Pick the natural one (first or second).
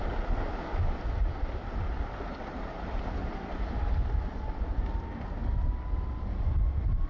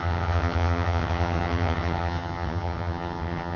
first